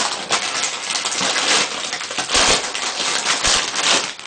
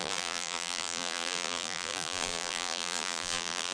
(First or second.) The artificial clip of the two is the second